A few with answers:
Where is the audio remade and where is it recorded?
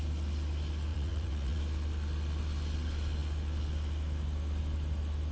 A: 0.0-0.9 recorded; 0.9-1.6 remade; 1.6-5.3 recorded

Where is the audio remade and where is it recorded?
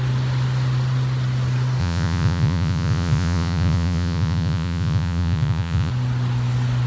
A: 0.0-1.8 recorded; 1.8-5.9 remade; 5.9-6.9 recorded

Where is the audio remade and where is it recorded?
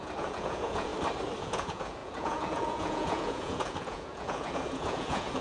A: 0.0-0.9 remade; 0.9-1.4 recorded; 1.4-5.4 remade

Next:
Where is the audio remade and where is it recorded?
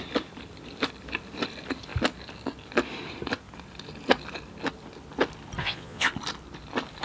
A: 0.0-5.6 recorded; 5.6-6.1 remade; 6.1-7.0 recorded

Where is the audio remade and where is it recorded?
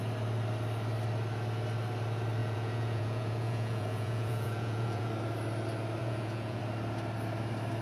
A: 0.0-2.4 recorded; 2.4-5.1 remade; 5.1-6.0 recorded; 6.0-6.6 remade; 6.6-7.8 recorded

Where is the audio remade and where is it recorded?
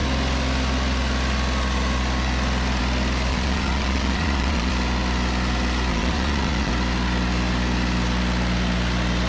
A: 0.0-3.3 recorded; 3.3-4.7 remade; 4.7-5.9 recorded; 5.9-6.7 remade; 6.7-9.3 recorded